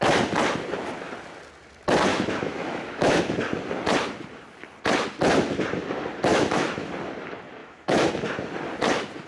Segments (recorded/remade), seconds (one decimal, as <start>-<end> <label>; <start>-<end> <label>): 0.0-2.1 recorded; 2.1-3.2 remade; 3.2-6.3 recorded; 6.3-6.9 remade; 6.9-7.6 recorded; 7.6-8.1 remade; 8.1-9.3 recorded